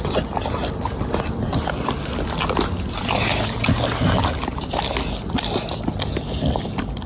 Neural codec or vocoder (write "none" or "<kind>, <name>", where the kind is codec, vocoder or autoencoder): none